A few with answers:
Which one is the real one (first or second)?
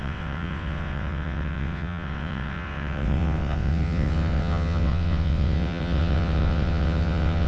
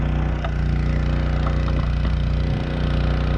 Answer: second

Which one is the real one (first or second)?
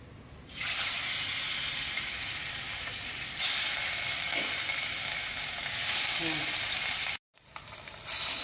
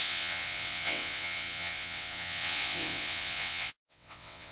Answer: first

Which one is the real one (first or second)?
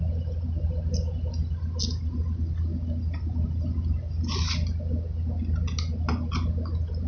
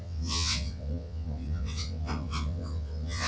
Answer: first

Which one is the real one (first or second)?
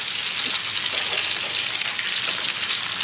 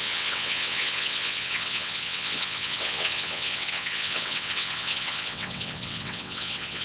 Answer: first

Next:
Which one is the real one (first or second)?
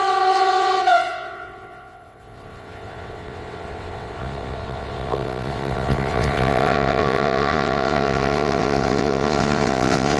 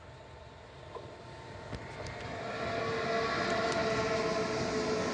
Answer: second